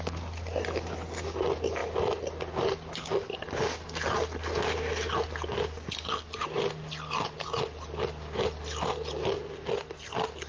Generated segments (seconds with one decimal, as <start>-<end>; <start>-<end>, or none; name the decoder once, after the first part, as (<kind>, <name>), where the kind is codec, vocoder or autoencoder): none